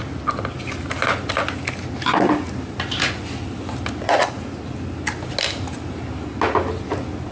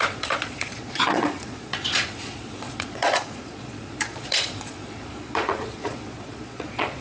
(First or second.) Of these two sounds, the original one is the first